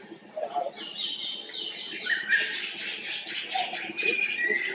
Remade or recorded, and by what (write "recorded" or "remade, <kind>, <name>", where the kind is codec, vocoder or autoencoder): recorded